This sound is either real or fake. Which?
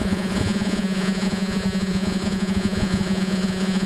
fake